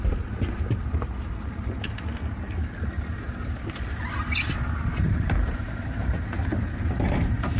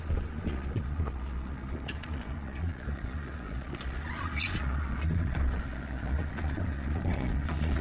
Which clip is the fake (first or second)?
second